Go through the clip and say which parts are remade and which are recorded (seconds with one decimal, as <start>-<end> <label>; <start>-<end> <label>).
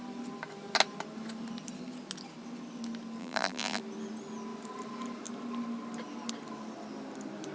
0.0-3.2 recorded; 3.2-3.8 remade; 3.8-7.5 recorded